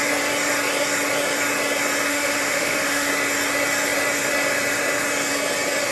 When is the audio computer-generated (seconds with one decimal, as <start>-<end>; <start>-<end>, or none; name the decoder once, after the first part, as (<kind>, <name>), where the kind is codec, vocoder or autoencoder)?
2.1-3.1 (autoencoder, DAC-VAE)